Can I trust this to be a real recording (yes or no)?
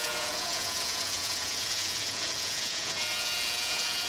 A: no